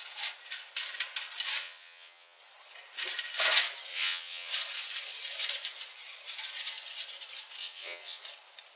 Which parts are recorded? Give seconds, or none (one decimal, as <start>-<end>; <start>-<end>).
0.0-1.6; 2.4-3.9; 4.5-7.6; 8.2-8.8